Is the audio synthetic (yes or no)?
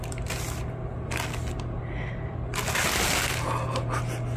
no